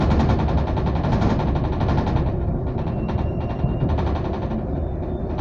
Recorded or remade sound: recorded